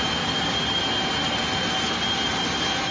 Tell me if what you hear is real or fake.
real